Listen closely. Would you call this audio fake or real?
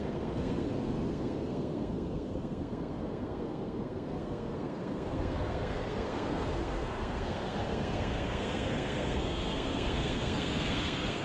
fake